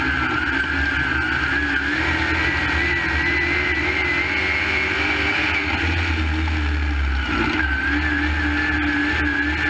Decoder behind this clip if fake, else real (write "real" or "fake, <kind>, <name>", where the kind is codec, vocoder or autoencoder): real